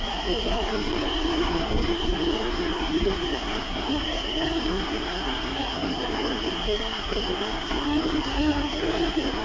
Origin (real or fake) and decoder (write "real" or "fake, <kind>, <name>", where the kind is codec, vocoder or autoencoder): fake, codec, SNAC